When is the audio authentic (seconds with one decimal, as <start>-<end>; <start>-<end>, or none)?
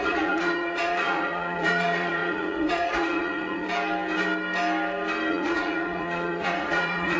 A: 3.7-5.3